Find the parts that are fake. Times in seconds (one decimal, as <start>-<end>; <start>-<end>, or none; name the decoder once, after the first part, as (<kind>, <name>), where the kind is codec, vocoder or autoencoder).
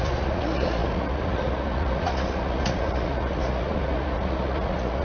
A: 0.0-5.0 (vocoder, Vocos)